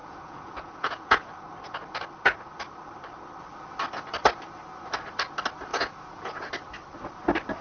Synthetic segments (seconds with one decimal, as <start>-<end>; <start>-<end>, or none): 0.0-1.3; 5.7-6.5